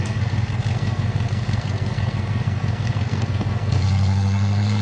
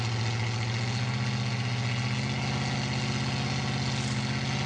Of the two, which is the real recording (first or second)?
second